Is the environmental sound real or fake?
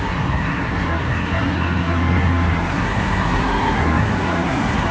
fake